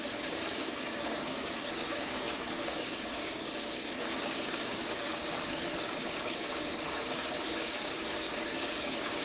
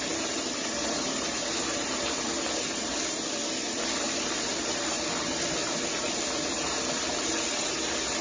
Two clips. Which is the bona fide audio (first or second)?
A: second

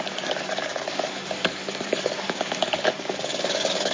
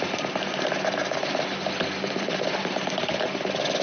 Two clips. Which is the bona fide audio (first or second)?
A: second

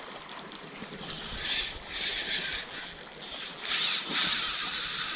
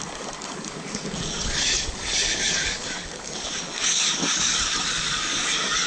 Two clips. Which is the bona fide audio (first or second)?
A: first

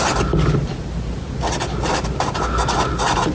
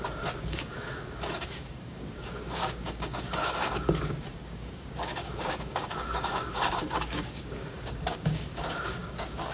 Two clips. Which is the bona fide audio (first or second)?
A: first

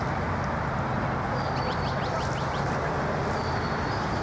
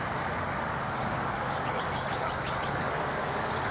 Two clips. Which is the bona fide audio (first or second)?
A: first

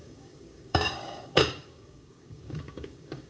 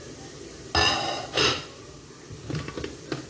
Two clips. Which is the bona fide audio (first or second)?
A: second